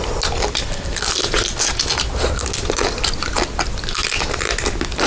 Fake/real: real